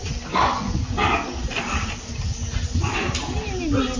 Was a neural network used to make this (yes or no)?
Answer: no